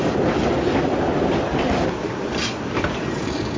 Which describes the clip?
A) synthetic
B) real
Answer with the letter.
B